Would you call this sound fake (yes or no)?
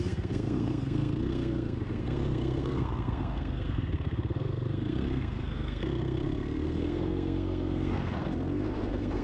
yes